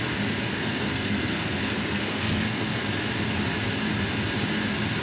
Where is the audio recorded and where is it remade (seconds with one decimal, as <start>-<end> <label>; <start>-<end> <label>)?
0.0-0.5 recorded; 0.5-2.8 remade; 2.8-5.0 recorded